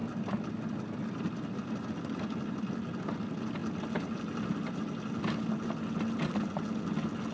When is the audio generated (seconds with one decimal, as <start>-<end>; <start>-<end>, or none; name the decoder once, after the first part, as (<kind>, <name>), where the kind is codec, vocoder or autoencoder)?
0.0-2.1 (vocoder, BigVGAN v2)